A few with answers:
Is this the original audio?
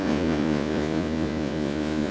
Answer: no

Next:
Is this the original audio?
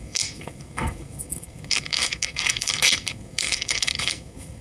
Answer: no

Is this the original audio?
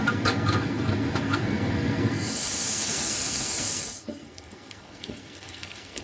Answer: no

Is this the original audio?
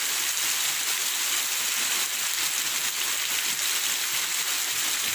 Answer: yes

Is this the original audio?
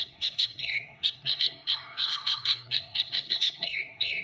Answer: no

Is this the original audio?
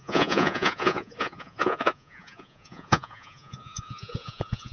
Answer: no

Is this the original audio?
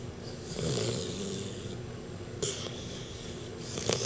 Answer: no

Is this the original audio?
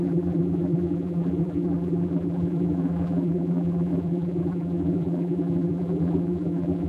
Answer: no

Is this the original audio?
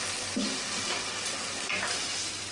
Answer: yes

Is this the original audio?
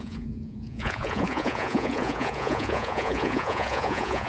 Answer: no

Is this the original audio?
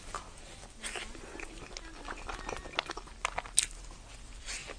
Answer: yes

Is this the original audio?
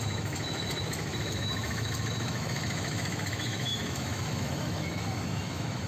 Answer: no